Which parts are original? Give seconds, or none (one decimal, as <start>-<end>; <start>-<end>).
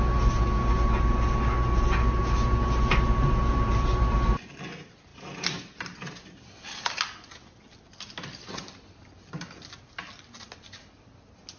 0.0-11.6